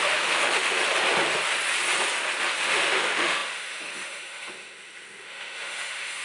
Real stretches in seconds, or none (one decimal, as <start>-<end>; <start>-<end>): 0.8-2.6